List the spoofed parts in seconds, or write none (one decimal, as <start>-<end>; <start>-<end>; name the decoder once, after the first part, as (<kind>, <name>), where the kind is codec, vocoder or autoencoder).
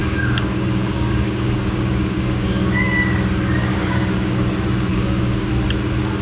0.0-2.8 (codec, DAC); 3.7-4.5; 4.9-5.5